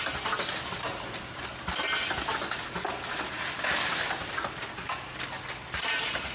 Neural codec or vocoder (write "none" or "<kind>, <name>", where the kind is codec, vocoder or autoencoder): none